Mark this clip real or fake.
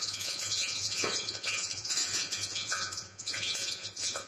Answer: fake